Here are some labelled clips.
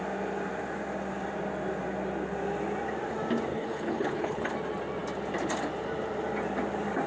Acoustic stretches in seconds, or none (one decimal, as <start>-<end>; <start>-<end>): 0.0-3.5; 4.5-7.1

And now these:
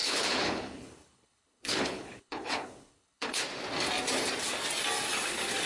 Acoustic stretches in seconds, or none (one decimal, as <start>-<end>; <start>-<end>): 3.4-5.7

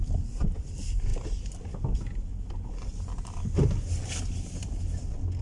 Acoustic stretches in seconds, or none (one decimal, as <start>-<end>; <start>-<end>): 0.0-5.4